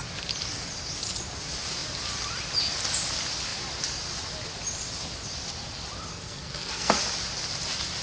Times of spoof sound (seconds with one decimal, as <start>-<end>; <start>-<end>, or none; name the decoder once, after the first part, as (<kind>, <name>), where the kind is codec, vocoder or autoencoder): 6.1-7.0 (codec, SNAC)